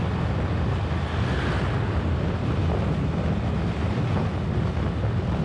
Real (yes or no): yes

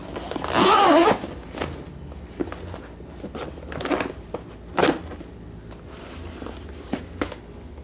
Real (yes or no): yes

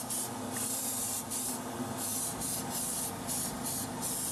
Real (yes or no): yes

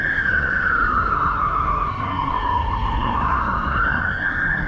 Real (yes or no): no